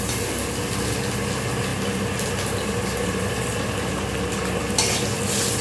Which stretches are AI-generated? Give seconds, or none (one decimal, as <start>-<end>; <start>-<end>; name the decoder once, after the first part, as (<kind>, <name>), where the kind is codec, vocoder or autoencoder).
none